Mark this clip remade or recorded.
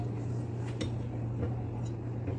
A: recorded